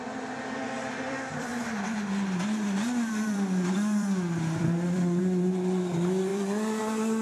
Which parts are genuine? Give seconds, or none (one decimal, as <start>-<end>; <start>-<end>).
none